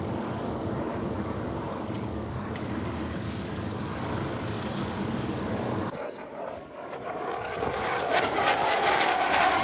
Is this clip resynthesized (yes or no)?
yes